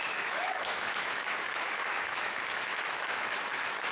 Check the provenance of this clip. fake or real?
fake